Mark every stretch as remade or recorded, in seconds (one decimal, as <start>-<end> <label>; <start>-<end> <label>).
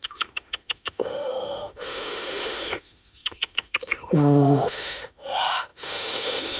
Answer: 0.0-6.6 remade